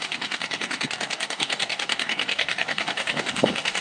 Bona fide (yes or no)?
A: no